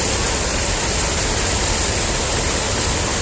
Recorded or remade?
recorded